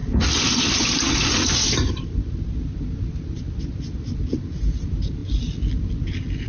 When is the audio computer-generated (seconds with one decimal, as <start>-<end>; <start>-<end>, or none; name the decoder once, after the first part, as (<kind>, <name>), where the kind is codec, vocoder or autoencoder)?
none